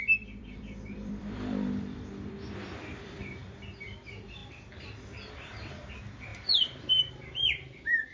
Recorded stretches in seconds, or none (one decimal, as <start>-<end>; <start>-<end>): 4.4-5.3